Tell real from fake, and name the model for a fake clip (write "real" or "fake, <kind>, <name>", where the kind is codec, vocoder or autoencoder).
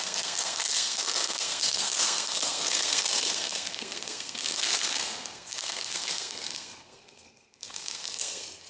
fake, codec, SNAC